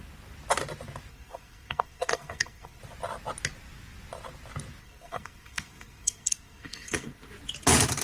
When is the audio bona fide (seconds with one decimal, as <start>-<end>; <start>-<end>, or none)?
0.0-1.1; 2.8-4.8; 7.3-8.0